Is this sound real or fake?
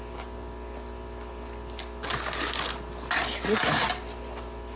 real